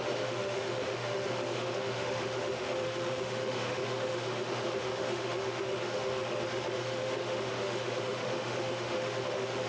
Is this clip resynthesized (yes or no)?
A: yes